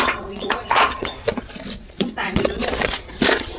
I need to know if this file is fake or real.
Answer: fake